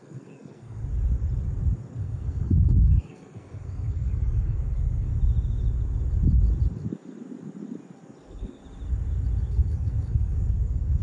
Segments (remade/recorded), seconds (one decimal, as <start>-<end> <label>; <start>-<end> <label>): 0.0-0.8 remade; 0.8-2.0 recorded; 2.0-5.1 remade; 5.1-8.2 recorded; 8.2-8.6 remade; 8.6-9.4 recorded; 9.4-11.0 remade